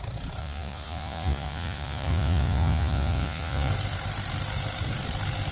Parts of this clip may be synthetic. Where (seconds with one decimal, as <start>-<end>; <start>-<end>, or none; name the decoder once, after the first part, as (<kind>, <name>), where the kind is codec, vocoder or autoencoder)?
0.4-3.7 (vocoder, Vocos)